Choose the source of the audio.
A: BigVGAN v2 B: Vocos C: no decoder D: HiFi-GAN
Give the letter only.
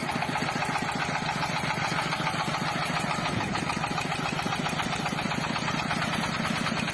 C